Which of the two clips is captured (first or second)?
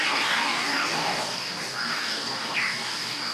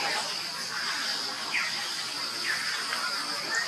second